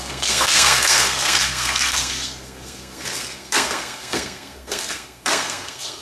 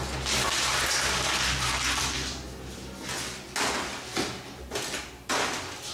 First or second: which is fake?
first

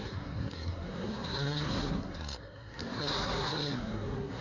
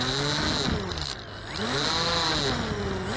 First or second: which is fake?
first